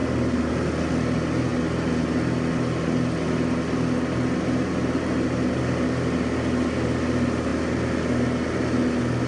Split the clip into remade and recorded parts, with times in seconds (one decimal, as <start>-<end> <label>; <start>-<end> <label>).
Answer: 0.0-9.3 recorded